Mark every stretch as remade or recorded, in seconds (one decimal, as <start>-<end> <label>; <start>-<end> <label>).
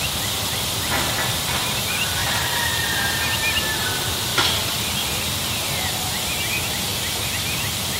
0.0-8.0 recorded